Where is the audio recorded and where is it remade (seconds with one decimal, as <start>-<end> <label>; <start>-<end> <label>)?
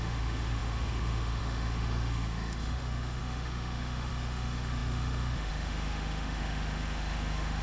0.0-7.6 remade